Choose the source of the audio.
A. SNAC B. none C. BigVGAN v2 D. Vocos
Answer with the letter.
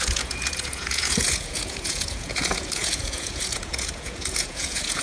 D